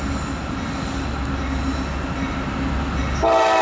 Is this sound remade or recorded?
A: recorded